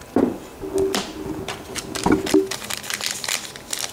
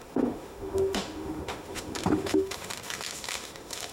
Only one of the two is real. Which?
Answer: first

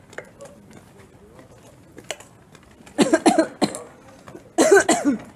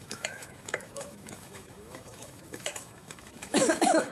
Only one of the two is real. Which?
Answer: first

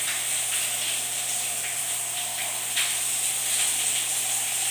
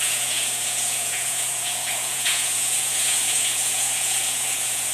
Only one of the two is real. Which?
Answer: first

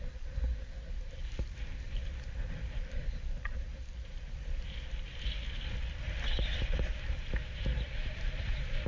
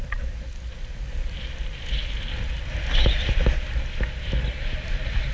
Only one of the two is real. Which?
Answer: second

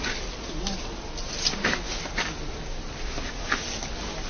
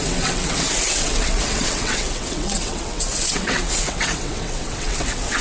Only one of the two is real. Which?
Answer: first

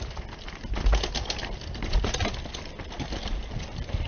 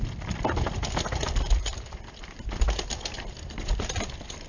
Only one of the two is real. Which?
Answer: first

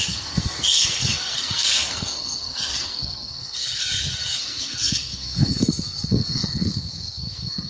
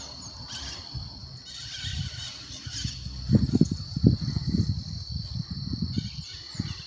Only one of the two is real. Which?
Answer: second